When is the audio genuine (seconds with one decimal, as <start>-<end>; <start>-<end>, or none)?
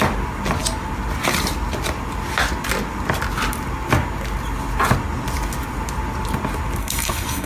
0.0-6.8